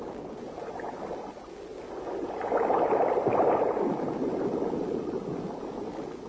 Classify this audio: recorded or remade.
recorded